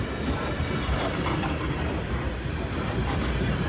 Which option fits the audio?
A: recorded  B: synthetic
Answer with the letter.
A